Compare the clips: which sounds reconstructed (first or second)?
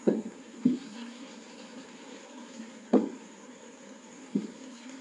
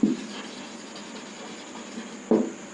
first